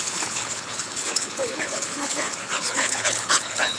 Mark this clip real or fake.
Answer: fake